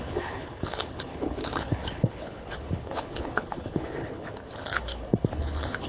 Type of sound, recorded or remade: remade